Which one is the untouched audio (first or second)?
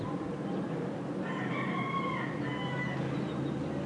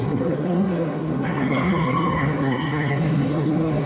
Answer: first